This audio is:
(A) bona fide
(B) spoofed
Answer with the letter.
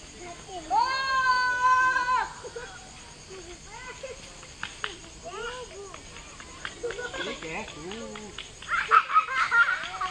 A